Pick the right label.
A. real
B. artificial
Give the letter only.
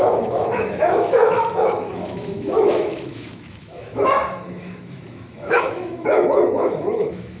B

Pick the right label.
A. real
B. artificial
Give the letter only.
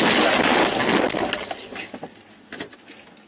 A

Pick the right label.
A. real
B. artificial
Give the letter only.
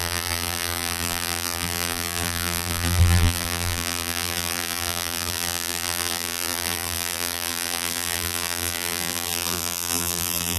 B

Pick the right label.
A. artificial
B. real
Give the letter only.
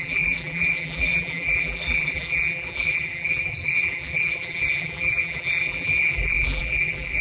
A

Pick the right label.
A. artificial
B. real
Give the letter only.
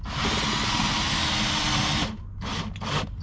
B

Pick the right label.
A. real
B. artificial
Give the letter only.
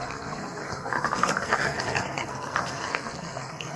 B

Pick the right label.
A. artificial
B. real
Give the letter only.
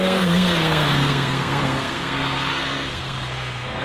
A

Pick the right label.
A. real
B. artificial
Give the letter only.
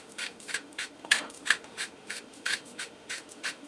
B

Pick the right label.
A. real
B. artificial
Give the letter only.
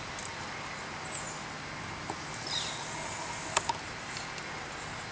A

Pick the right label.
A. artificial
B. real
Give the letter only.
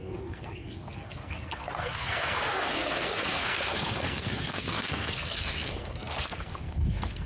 A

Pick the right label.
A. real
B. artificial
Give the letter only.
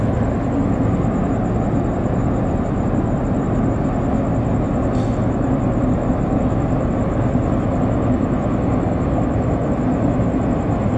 A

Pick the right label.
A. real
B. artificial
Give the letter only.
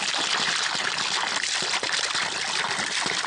A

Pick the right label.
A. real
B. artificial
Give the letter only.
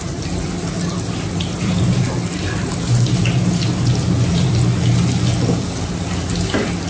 A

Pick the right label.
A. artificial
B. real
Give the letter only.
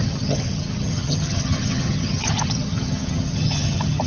A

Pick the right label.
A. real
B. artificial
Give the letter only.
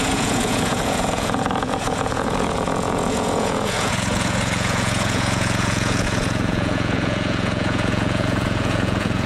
B